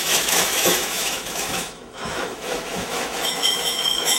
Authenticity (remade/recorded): remade